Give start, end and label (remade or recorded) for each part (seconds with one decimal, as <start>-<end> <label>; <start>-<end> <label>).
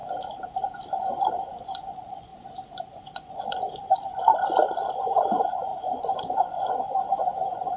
0.0-1.6 recorded; 1.6-2.3 remade; 2.3-3.0 recorded; 3.0-4.3 remade; 4.3-5.0 recorded; 5.0-7.8 remade